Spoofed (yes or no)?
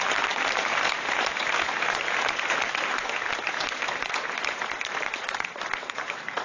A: yes